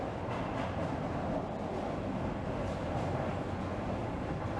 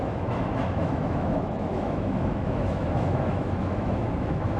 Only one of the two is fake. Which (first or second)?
second